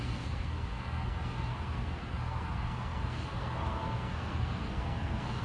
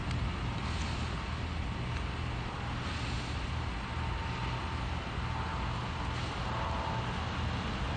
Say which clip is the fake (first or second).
first